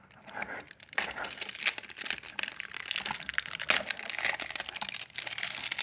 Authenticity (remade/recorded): recorded